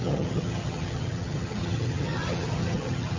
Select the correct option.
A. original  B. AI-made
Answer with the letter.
B